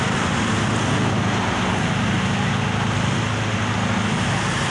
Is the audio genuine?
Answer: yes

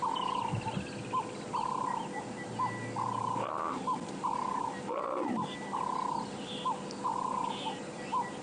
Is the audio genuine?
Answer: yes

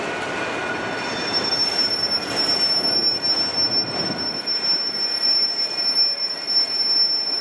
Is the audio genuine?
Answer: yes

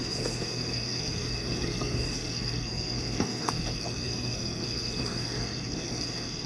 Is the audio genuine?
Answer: no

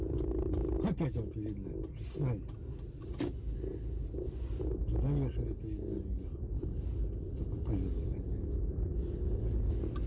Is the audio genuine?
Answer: yes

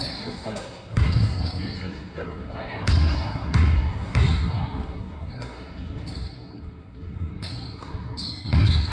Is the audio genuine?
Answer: no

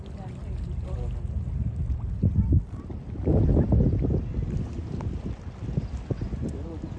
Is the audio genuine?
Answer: yes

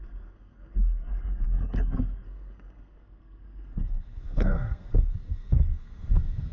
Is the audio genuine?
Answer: no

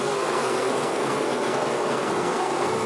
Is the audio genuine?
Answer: no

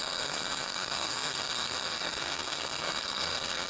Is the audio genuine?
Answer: no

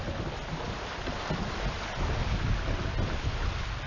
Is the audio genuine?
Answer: yes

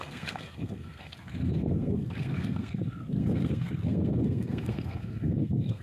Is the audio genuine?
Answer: no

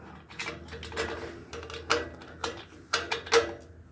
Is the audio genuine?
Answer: yes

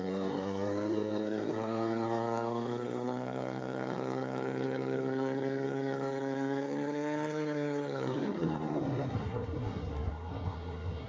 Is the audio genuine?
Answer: no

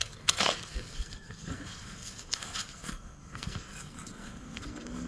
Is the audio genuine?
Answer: no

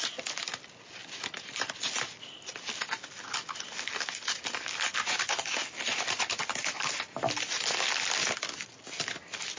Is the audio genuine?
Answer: yes